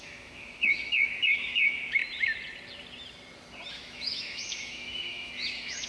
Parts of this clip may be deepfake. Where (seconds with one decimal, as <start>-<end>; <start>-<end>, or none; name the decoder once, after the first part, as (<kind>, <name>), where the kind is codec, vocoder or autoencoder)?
0.0-2.0 (autoencoder, DAC-VAE); 3.7-5.9